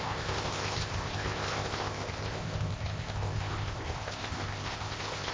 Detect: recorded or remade remade